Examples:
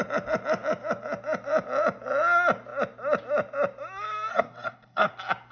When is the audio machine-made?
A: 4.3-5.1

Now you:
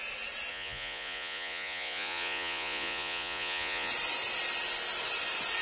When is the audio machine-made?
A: 0.5-3.9

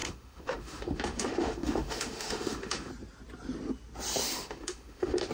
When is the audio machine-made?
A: 0.0-2.9; 4.2-5.3